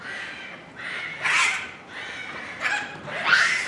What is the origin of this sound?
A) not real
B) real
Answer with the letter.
B